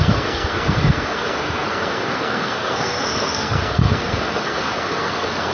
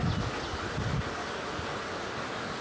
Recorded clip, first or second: second